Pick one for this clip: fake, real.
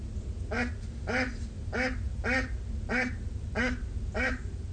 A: real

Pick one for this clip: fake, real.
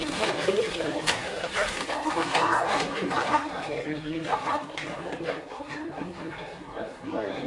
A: fake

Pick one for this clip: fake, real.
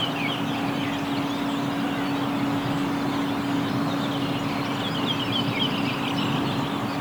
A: real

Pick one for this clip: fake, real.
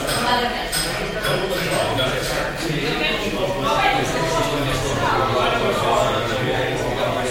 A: fake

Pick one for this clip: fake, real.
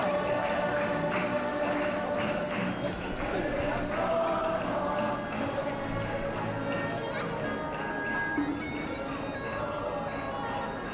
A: real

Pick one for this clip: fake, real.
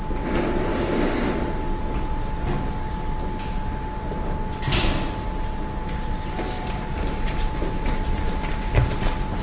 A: real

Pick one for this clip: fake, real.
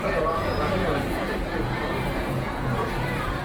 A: fake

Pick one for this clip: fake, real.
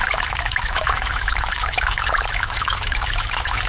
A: fake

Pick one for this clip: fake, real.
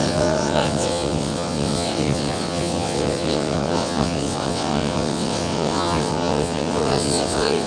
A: fake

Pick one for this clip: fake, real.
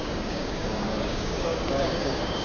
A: fake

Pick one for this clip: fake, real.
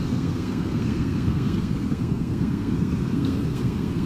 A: fake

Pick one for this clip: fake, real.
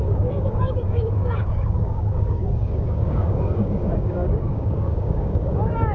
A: fake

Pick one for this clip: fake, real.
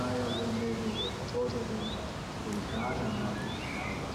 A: real